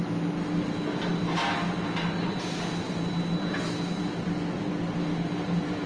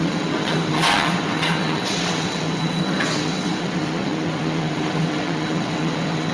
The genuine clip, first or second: first